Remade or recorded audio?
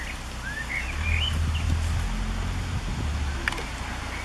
recorded